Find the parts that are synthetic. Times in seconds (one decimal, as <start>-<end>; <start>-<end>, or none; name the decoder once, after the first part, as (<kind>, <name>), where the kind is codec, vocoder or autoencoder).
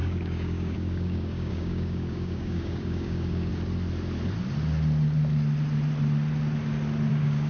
0.0-3.5 (codec, DAC); 7.1-7.5